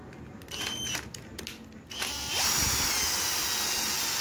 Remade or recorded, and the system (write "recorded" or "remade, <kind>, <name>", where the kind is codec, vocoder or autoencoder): recorded